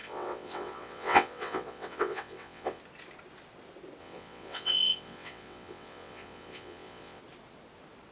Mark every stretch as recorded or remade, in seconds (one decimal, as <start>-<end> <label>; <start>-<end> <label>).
0.0-2.8 remade; 2.8-4.0 recorded; 4.0-7.2 remade; 7.2-8.1 recorded